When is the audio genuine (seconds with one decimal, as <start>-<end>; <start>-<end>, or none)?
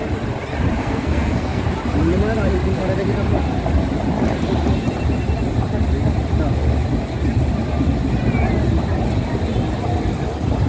0.0-0.8; 1.6-10.7